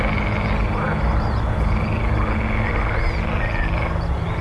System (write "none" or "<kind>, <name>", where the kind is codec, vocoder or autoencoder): none